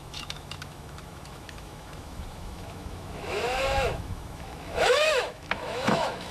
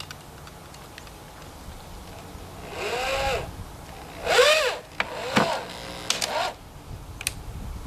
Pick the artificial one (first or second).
first